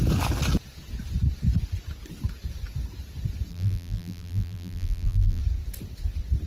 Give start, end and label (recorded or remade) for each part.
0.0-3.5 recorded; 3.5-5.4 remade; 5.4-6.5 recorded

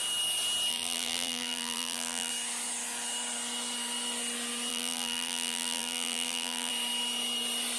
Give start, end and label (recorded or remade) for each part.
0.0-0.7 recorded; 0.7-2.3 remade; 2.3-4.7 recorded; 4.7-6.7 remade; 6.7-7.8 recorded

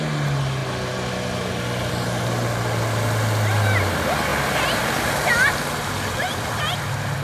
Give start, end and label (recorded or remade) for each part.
0.0-7.2 recorded

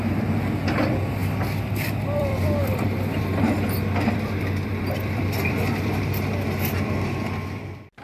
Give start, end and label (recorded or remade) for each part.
0.0-1.2 recorded; 1.2-6.0 remade; 6.0-8.0 recorded